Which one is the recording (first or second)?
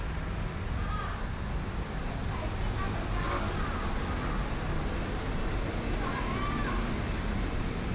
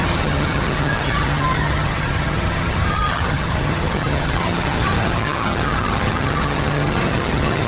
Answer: first